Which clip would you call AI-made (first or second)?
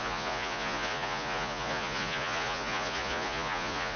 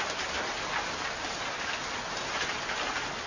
first